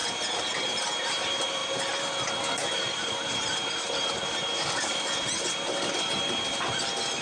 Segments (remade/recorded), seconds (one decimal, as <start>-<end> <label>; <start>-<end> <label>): 0.0-1.1 recorded; 1.1-1.6 remade; 1.6-5.9 recorded; 5.9-7.2 remade